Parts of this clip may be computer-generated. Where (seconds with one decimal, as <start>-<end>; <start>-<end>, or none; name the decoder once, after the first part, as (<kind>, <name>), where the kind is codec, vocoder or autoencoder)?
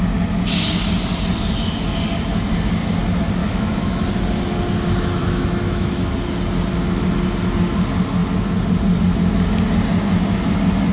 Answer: 3.4-4.1 (autoencoder, DAC-VAE); 5.2-6.1